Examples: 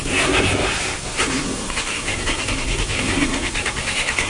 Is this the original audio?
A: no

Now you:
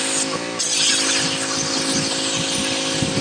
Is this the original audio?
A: yes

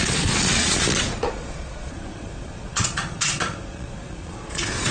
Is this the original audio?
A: no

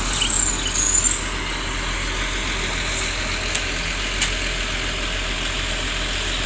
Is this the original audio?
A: yes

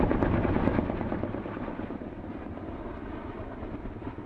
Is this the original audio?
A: yes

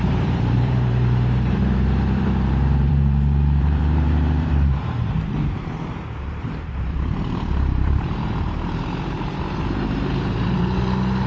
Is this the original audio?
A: no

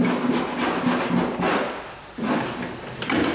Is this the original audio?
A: yes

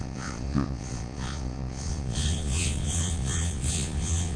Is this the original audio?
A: no